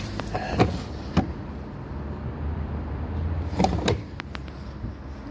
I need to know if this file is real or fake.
real